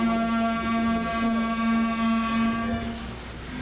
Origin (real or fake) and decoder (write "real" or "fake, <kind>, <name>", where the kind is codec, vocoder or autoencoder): real